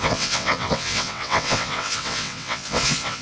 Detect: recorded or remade remade